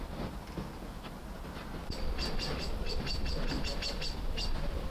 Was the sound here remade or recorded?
recorded